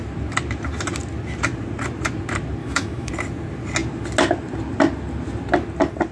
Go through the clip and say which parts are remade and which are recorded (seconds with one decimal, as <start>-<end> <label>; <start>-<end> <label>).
0.0-2.6 recorded; 2.6-3.1 remade; 3.1-6.1 recorded